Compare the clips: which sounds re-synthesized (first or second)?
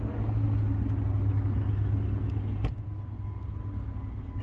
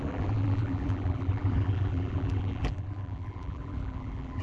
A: second